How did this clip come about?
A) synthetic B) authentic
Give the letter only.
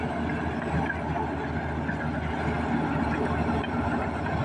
B